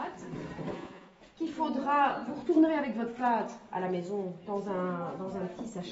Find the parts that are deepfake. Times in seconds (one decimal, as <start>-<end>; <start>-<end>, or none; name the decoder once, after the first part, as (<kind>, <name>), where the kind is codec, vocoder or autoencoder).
0.7-1.2 (vocoder, Vocos)